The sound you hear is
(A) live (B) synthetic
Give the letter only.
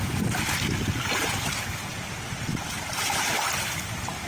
A